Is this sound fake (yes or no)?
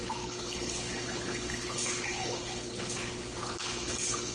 yes